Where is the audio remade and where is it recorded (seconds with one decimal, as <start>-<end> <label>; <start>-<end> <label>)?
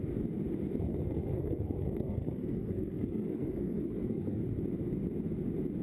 0.0-0.9 recorded; 0.9-4.4 remade; 4.4-5.8 recorded